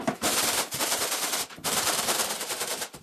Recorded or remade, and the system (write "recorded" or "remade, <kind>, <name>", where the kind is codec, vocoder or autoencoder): remade, vocoder, BigVGAN v2